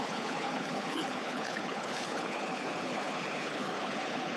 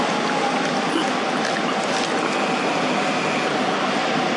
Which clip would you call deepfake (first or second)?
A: first